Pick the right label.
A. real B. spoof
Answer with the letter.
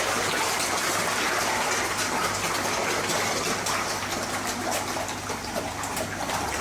A